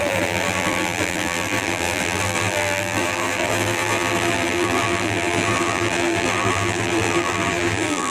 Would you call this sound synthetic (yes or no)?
yes